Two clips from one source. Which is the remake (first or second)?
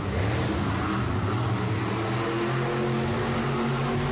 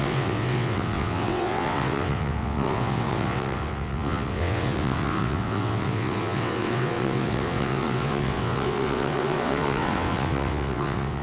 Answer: second